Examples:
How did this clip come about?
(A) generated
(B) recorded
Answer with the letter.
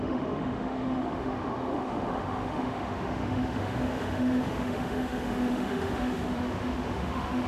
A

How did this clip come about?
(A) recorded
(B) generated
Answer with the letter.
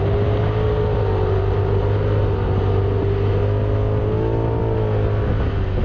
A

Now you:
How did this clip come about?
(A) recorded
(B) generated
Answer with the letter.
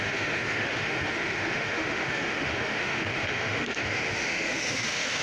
B